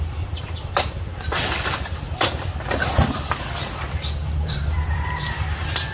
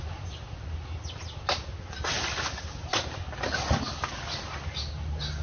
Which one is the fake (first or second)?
first